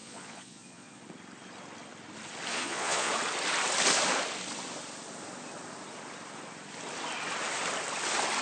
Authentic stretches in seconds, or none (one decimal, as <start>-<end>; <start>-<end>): 1.0-2.5; 3.1-8.4